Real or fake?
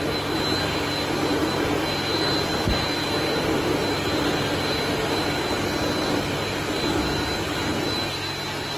real